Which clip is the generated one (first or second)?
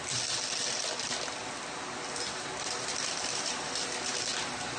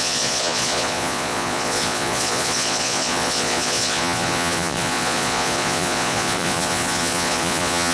second